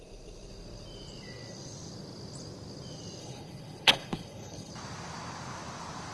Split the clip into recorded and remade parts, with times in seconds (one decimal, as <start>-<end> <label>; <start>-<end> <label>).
0.0-3.2 recorded; 3.2-4.7 remade; 4.7-6.1 recorded